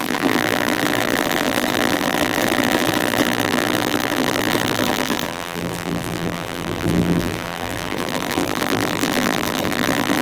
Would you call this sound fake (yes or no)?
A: yes